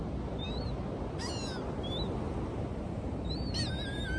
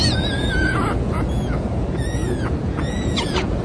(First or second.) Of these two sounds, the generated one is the second